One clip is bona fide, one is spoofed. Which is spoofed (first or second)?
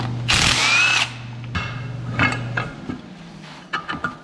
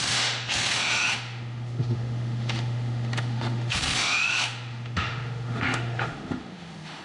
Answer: second